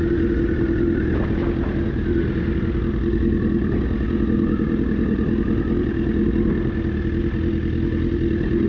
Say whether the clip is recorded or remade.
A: recorded